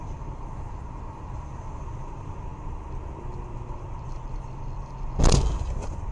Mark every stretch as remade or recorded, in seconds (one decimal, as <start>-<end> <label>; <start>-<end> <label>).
0.0-6.1 recorded

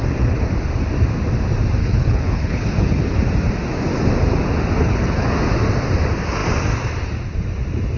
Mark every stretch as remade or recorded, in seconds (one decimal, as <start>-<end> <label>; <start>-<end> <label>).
0.0-1.8 recorded; 1.8-3.2 remade; 3.2-4.8 recorded; 4.8-5.3 remade; 5.3-8.0 recorded

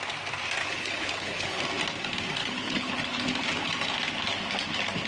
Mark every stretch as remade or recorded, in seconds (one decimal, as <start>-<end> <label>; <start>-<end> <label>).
0.0-0.6 recorded; 0.6-1.6 remade; 1.6-2.4 recorded; 2.4-3.2 remade; 3.2-5.1 recorded

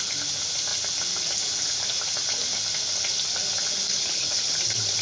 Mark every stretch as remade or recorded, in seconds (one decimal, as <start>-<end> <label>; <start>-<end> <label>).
0.0-3.9 recorded; 3.9-4.6 remade; 4.6-5.0 recorded

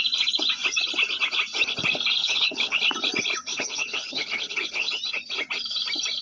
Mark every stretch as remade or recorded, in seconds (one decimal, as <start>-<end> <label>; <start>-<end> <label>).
0.0-2.2 recorded; 2.2-2.8 remade; 2.8-3.5 recorded; 3.5-4.9 remade; 4.9-6.2 recorded